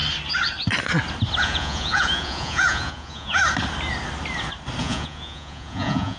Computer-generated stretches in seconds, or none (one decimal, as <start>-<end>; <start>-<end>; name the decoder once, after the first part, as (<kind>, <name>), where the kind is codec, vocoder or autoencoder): 1.4-3.4 (vocoder, Vocos); 4.8-6.2

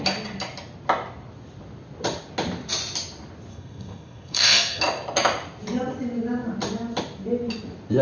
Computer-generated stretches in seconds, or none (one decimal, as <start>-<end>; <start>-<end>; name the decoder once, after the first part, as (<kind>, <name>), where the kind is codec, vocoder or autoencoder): 3.5-4.8 (codec, SNAC)

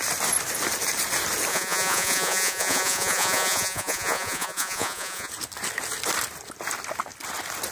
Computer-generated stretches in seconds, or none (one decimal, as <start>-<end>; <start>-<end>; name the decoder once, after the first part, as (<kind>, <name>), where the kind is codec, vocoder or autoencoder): 1.5-5.3 (vocoder, Vocos)

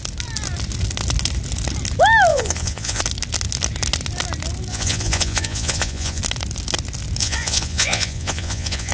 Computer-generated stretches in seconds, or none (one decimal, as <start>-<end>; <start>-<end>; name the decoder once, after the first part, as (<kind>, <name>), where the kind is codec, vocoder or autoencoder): 2.3-3.0 (vocoder, Vocos); 4.7-6.2; 7.2-8.9

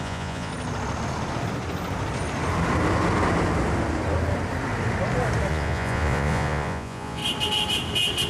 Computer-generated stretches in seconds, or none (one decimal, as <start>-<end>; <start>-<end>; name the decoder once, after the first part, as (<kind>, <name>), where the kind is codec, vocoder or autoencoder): 0.0-0.5 (vocoder, Vocos); 5.5-7.2

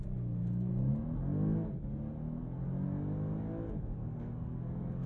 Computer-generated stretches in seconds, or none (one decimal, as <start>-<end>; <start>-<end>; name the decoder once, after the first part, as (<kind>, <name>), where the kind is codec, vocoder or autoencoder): 0.0-0.7 (codec, SNAC); 3.8-5.1

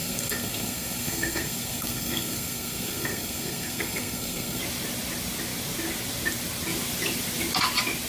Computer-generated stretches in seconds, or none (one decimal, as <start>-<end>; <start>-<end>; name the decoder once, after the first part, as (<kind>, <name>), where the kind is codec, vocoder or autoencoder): 0.0-4.6 (codec, SNAC)

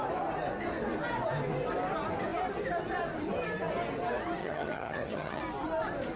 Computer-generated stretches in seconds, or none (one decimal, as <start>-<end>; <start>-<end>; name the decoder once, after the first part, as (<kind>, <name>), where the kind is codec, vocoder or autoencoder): 4.4-5.4 (vocoder, HiFi-GAN)